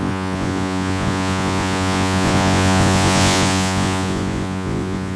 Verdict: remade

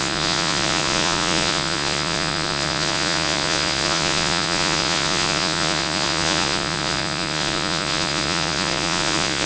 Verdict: remade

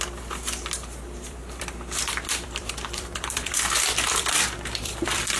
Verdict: remade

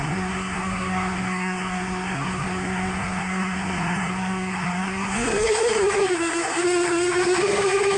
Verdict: remade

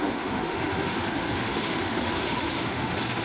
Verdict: remade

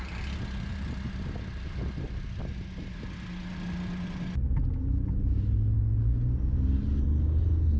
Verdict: recorded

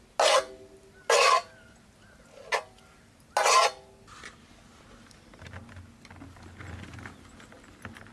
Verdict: recorded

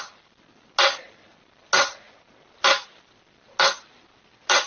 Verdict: recorded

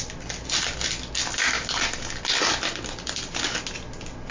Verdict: recorded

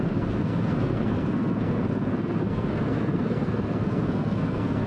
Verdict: remade